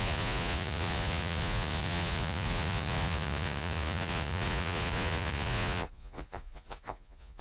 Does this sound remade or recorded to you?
remade